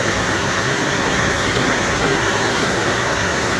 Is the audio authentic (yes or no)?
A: no